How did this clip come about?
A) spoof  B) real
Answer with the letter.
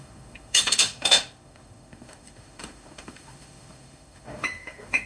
A